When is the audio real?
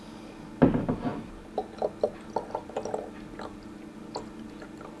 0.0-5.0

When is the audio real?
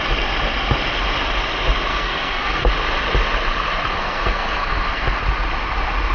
0.0-1.9; 2.6-4.0; 5.2-6.1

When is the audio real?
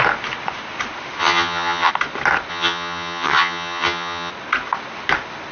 0.0-1.2; 1.9-2.5; 4.3-5.5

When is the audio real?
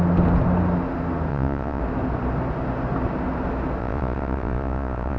0.0-1.3; 1.8-3.8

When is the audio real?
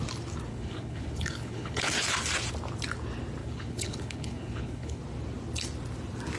0.0-0.5; 1.9-3.4; 5.0-6.4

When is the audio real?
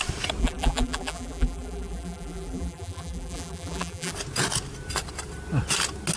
0.0-0.4; 4.1-6.2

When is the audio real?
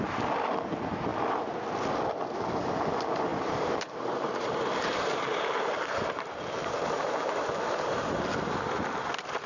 0.0-3.3; 8.2-9.5